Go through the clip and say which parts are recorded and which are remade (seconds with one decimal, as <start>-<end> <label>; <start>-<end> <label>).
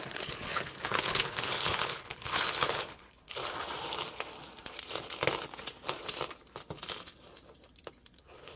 0.0-3.4 remade; 3.4-8.2 recorded; 8.2-8.6 remade